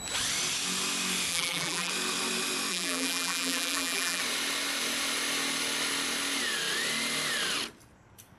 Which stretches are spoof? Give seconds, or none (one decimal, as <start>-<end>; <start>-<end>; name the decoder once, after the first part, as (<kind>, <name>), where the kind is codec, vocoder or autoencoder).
1.3-1.9 (vocoder, BigVGAN v2); 2.7-4.2